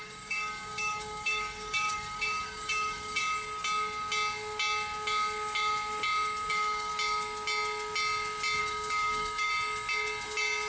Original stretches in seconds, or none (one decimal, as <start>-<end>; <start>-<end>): 3.2-6.5; 6.9-8.6; 9.5-10.7